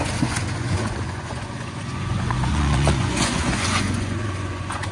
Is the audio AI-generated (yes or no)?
yes